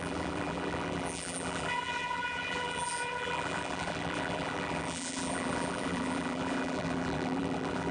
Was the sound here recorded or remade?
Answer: remade